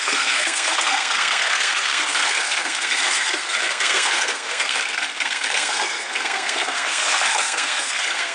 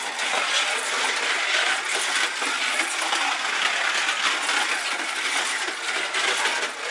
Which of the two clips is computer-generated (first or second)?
first